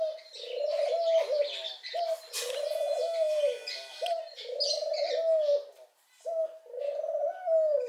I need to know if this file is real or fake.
real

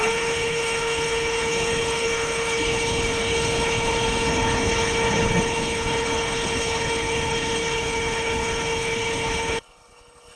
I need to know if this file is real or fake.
fake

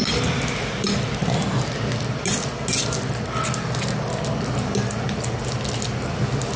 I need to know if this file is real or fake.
real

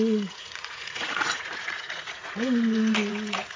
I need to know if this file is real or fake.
fake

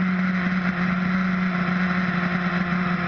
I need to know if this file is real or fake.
real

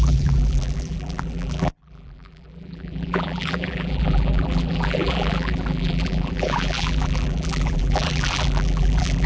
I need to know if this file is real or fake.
fake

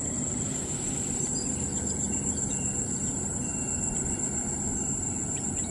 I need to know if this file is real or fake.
real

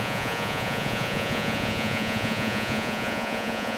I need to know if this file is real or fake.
fake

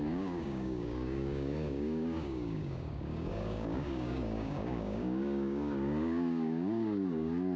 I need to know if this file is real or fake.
fake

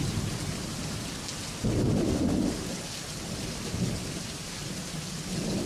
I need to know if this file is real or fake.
real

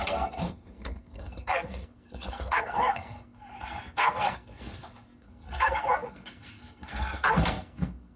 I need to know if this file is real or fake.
fake